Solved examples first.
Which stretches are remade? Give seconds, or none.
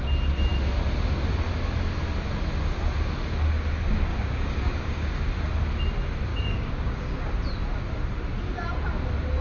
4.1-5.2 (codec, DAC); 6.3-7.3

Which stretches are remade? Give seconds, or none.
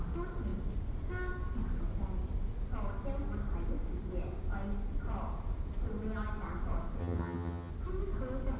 7.0-7.7 (vocoder, HiFi-GAN)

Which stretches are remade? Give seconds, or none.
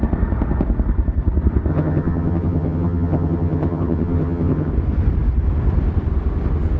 1.7-4.7 (vocoder, HiFi-GAN)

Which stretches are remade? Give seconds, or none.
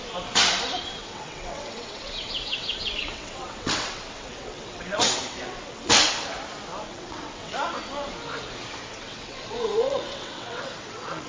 1.0-6.2 (vocoder, WaveNeXt); 6.9-7.7; 8.9-11.3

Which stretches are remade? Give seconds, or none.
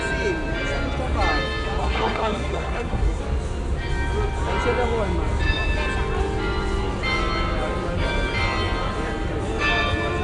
1.8-3.2 (codec, SNAC)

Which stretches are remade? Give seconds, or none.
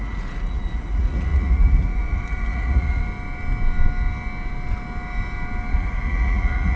0.0-3.0 (vocoder, Vocos); 5.7-6.8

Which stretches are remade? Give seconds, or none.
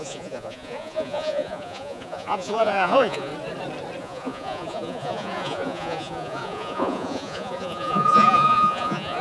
0.0-3.3 (vocoder, Vocos); 4.0-9.2